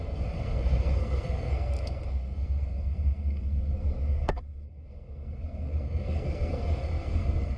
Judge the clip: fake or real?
fake